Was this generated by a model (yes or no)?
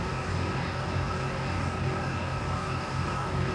yes